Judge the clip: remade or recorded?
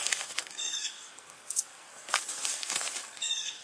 remade